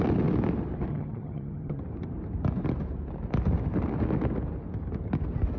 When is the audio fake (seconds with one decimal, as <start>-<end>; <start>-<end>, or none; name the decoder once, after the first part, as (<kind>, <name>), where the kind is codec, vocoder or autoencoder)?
0.9-1.8 (vocoder, HiFi-GAN)